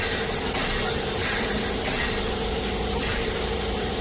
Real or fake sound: fake